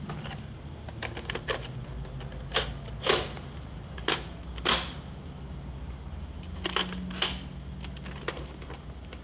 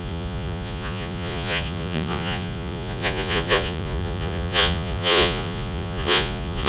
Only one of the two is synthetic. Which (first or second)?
second